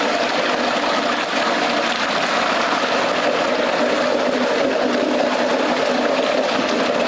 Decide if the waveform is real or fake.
real